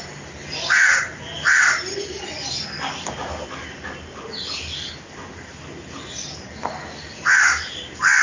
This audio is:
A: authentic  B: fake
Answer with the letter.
A